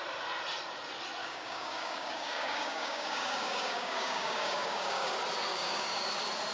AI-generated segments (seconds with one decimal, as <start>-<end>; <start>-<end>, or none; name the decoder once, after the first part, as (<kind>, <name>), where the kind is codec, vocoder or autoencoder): 1.2-5.1 (codec, DAC); 5.5-6.1